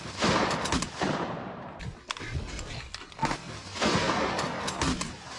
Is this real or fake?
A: real